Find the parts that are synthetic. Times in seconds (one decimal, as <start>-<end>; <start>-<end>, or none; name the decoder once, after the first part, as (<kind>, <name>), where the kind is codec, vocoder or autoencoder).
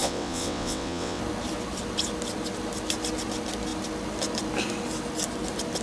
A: 0.0-1.2 (vocoder, WaveNeXt)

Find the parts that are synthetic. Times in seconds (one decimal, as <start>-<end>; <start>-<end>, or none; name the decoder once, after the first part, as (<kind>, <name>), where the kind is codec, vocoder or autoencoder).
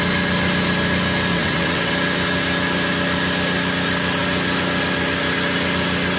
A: 1.3-1.9 (vocoder, WaveNeXt)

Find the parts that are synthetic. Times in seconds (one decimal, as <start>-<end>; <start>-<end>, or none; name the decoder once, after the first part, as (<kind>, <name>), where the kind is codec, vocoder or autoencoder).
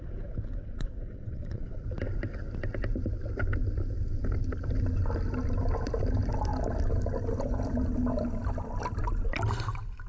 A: 0.6-1.8 (vocoder, WaveNeXt)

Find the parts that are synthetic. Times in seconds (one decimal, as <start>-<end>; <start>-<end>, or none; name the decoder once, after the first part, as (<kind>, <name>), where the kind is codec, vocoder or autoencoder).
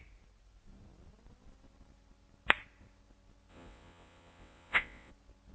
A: 3.5-5.1 (vocoder, WaveNeXt)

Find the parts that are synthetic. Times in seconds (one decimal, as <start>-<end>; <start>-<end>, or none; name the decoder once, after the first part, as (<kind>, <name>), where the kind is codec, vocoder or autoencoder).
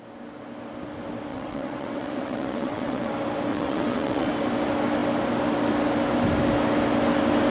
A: 1.3-3.1 (vocoder, WaveNeXt); 3.5-4.3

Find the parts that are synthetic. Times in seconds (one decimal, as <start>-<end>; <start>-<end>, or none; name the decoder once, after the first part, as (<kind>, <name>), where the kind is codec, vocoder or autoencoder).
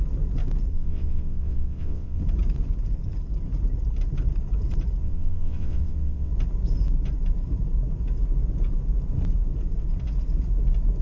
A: 0.7-2.2 (vocoder, WaveNeXt); 5.0-6.3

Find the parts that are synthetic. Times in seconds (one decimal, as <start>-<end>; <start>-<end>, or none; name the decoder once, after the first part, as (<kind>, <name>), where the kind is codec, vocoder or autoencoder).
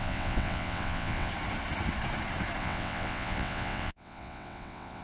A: 0.0-1.3 (vocoder, WaveNeXt); 2.6-5.0